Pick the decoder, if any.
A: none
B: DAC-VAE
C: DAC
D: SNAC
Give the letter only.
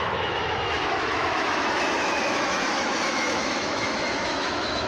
B